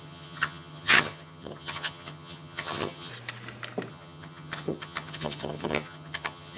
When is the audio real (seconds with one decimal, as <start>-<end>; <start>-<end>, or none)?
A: 3.1-3.9